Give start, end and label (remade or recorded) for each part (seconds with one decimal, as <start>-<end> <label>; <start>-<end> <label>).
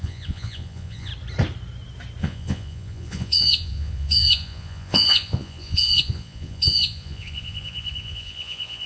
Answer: 0.0-1.1 remade; 1.1-2.2 recorded; 2.2-8.9 remade